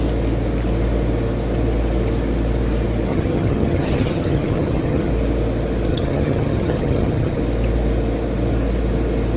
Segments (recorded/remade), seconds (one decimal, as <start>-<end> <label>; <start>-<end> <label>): 0.0-3.1 recorded; 3.1-5.1 remade; 5.1-5.9 recorded; 5.9-7.4 remade; 7.4-9.4 recorded